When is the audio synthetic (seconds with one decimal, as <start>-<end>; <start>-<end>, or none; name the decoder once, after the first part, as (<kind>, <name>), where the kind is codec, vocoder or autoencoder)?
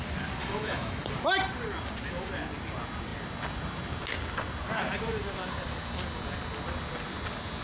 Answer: 0.4-1.1 (autoencoder, DAC-VAE)